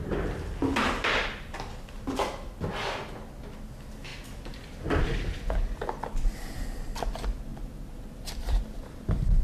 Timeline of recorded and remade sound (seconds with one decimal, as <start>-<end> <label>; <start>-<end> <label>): 0.0-0.6 recorded; 0.6-2.3 remade; 2.3-7.5 recorded; 7.5-9.4 remade